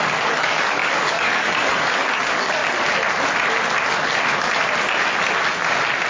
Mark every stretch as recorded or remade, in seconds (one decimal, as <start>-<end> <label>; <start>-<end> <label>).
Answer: 0.0-2.6 remade; 2.6-6.1 recorded